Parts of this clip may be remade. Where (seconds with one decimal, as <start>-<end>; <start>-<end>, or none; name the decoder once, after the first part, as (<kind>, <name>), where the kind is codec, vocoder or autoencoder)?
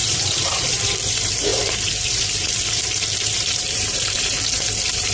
0.0-5.1 (vocoder, BigVGAN v2)